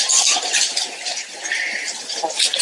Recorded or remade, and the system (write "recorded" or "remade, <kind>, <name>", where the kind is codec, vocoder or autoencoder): recorded